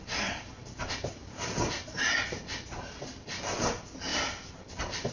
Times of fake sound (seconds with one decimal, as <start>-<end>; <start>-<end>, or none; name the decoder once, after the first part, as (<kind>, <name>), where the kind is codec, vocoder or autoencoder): none

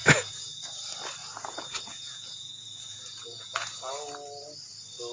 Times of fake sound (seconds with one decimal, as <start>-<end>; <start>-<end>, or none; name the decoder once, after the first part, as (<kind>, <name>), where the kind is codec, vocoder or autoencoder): 0.0-0.6 (vocoder, Vocos); 1.2-3.9

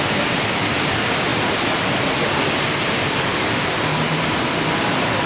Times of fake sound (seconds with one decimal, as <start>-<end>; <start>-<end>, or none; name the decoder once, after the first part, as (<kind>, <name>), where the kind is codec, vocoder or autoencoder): none